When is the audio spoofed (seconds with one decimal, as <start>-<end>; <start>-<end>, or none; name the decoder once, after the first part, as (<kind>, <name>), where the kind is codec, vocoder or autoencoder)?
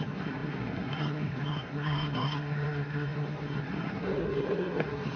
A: 0.0-5.2 (codec, SNAC)